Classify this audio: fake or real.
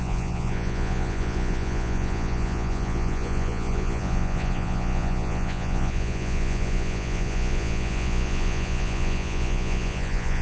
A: fake